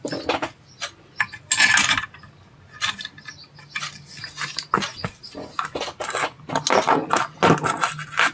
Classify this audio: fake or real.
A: real